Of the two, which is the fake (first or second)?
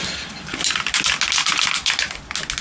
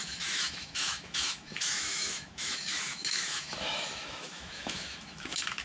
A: second